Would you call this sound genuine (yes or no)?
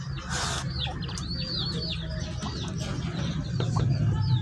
yes